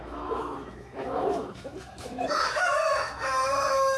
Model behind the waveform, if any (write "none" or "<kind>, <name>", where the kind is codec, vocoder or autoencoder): autoencoder, DAC-VAE